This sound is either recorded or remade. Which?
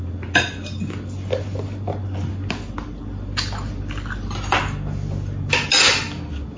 recorded